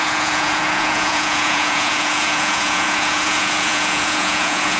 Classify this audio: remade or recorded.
remade